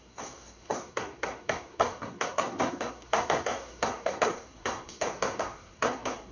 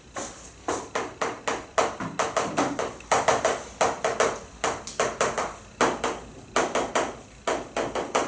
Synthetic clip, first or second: first